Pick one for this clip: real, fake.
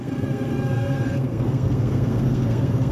fake